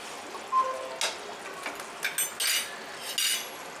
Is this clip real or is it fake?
real